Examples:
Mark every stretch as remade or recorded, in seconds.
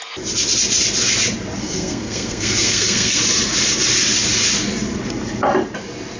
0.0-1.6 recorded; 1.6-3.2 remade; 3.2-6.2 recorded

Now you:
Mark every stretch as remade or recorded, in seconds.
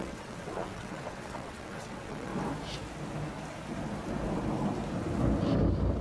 0.0-2.3 remade; 2.3-6.0 recorded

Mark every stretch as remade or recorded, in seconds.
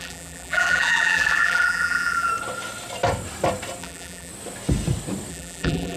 0.0-2.3 remade; 2.3-3.8 recorded; 3.8-4.3 remade; 4.3-5.3 recorded; 5.3-6.0 remade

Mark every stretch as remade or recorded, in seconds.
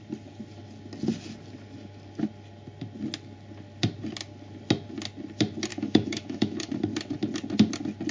0.0-5.7 recorded; 5.7-6.7 remade; 6.7-8.1 recorded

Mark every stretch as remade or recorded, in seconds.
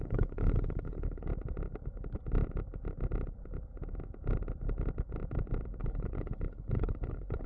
0.0-1.3 remade; 1.3-5.8 recorded; 5.8-7.5 remade